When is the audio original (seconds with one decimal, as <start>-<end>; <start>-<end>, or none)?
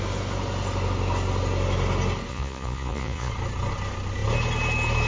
0.0-2.3; 3.3-5.1